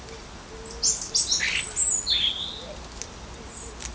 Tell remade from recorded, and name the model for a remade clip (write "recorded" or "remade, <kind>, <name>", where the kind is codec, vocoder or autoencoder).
recorded